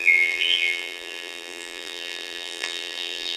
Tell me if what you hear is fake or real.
fake